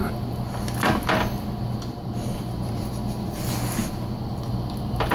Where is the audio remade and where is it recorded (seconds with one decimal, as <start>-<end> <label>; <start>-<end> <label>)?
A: 0.0-5.1 recorded